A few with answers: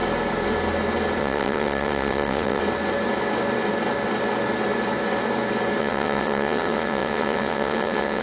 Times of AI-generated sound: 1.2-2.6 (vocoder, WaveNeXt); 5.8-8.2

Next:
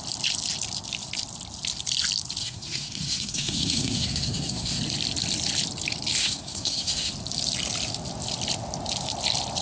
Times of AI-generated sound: 2.4-4.8 (codec, SNAC); 6.2-7.1

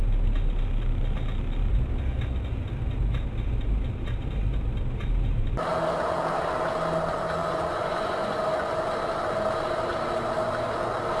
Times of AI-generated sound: 7.4-8.4 (vocoder, Vocos)

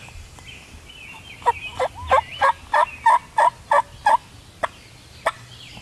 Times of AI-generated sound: none

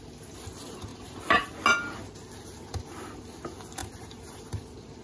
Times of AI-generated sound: 0.9-1.5 (vocoder, BigVGAN v2); 3.8-4.4

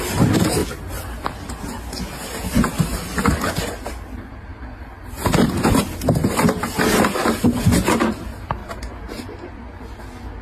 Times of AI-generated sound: none

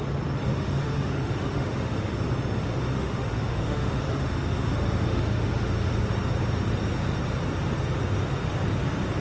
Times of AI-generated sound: 0.5-2.1 (autoencoder, DAC-VAE); 2.7-6.0

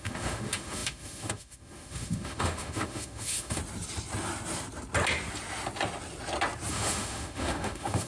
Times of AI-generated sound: 0.0-3.6 (autoencoder, DAC-VAE); 6.7-8.1